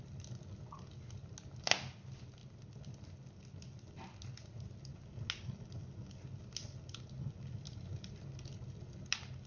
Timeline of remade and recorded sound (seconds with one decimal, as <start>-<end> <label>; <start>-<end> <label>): 0.0-9.5 recorded